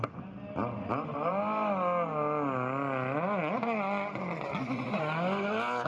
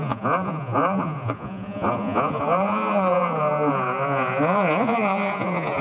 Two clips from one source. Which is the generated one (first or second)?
second